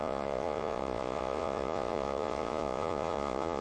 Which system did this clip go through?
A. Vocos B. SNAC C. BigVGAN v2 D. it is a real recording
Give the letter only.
A